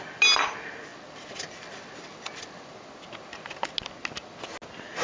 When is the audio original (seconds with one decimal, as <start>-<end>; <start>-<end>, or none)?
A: 0.0-5.0